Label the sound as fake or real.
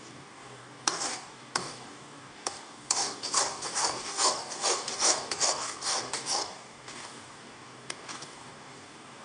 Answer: fake